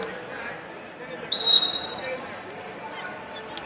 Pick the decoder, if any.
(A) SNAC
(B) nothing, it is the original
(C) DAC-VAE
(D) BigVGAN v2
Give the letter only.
B